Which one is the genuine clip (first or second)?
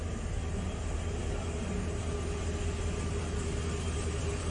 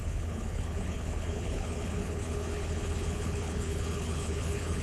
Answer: first